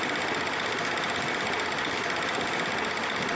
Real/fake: real